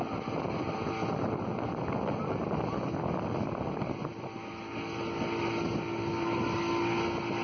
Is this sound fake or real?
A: real